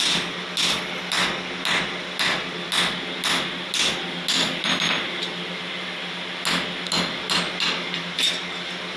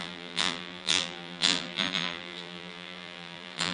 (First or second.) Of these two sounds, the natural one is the first